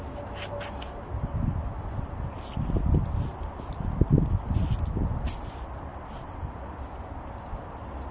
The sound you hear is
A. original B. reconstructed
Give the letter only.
A